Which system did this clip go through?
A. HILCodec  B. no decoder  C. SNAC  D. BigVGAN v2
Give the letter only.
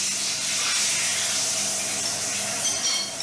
B